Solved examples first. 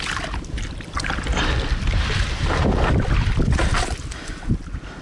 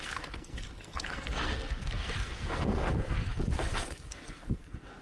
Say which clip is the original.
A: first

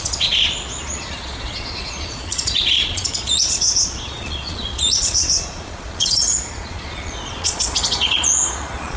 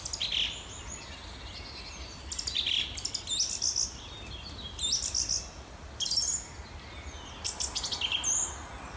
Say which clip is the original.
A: second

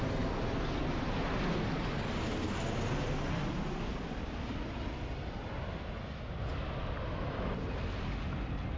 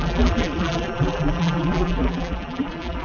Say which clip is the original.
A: first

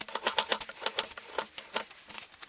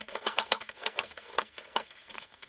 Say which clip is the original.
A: first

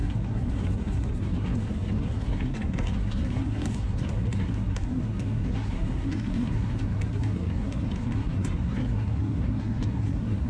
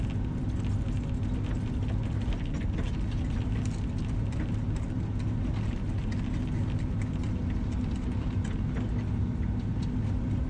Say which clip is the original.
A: second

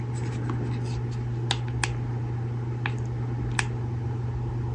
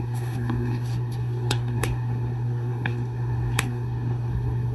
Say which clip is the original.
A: first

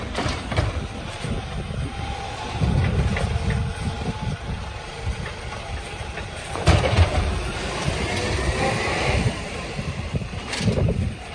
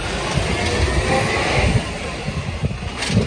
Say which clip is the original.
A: second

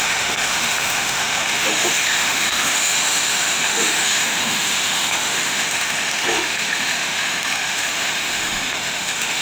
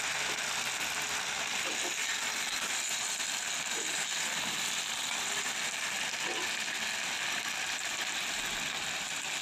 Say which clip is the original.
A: second